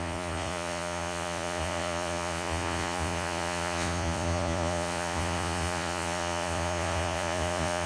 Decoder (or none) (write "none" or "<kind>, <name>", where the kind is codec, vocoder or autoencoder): vocoder, Vocos